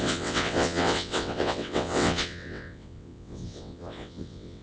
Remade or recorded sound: remade